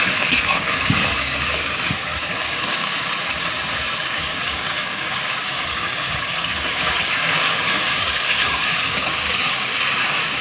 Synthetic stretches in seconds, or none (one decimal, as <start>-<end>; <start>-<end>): 0.0-10.4